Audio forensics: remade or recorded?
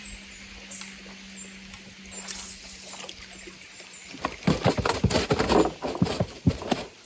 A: recorded